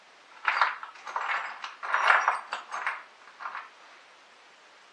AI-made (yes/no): no